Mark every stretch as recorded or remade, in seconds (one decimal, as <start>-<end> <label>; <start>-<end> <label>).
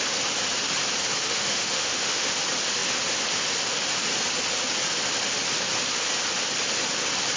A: 0.0-1.2 recorded; 1.2-2.4 remade; 2.4-7.4 recorded